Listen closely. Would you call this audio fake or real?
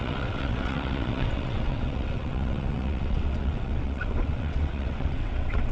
fake